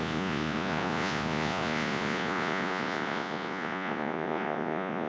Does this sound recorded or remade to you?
remade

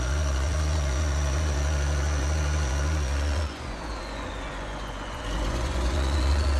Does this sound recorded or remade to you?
remade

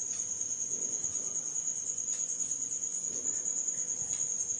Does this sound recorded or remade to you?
remade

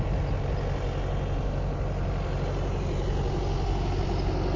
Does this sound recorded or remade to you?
recorded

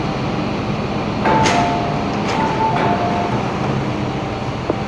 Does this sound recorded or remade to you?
recorded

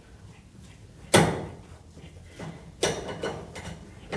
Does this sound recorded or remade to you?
recorded